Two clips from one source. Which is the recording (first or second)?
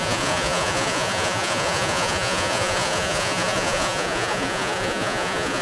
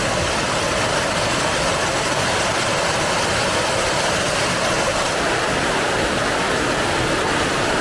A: second